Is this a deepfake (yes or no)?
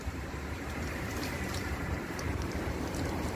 yes